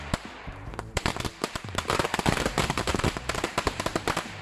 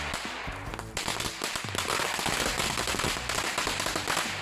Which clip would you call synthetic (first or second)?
first